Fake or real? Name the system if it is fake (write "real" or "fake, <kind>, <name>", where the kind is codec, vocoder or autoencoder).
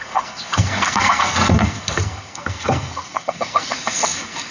fake, codec, SNAC